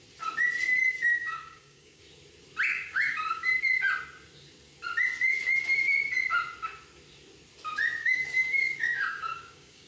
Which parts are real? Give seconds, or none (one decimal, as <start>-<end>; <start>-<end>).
0.0-1.1; 2.0-2.7; 3.5-8.0